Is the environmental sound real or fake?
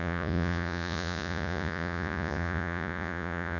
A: fake